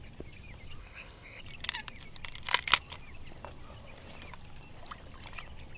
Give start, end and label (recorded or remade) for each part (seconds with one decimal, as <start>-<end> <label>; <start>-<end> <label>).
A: 0.0-0.8 recorded; 0.8-1.4 remade; 1.4-5.8 recorded